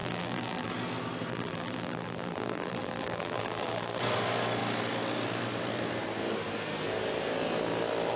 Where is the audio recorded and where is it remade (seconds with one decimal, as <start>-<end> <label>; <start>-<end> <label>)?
0.0-0.7 remade; 0.7-1.3 recorded; 1.3-4.0 remade; 4.0-8.2 recorded